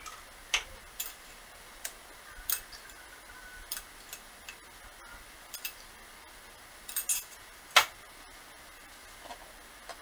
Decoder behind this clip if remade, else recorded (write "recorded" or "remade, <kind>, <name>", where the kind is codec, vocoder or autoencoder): recorded